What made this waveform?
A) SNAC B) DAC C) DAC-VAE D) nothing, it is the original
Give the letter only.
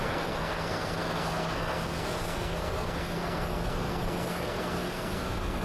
A